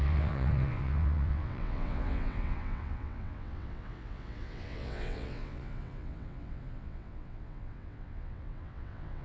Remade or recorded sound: remade